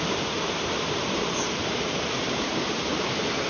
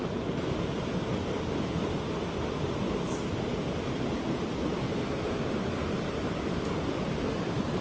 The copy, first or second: first